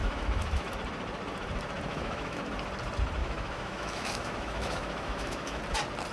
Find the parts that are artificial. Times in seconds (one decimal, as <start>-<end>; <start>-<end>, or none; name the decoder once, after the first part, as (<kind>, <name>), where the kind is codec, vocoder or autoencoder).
0.0-0.7 (autoencoder, DAC-VAE); 1.9-2.4; 3.2-5.6